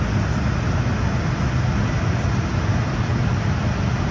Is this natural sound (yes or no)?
yes